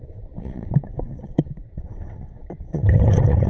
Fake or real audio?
fake